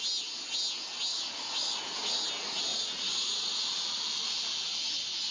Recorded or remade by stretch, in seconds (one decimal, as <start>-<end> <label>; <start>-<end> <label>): 0.0-1.1 recorded; 1.1-2.2 remade; 2.2-2.7 recorded; 2.7-3.5 remade; 3.5-5.3 recorded